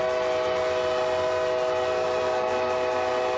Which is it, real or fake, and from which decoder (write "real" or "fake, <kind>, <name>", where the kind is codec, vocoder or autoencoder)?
real